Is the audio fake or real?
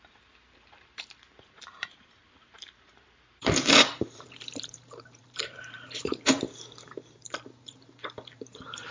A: fake